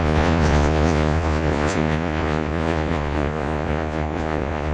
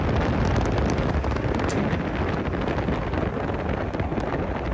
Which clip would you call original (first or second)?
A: second